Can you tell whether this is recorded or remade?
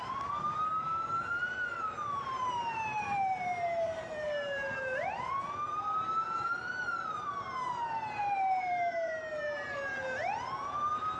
remade